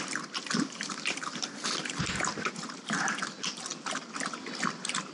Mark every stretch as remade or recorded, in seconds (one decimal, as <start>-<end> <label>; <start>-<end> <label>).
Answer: 0.0-1.3 recorded; 1.3-2.0 remade; 2.0-3.7 recorded; 3.7-4.4 remade; 4.4-5.1 recorded